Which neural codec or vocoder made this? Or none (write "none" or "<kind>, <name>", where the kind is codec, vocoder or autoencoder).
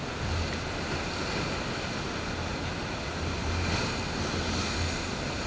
none